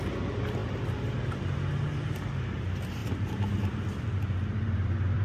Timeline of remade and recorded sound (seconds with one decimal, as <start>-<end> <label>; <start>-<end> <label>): 0.0-3.0 recorded; 3.0-5.2 remade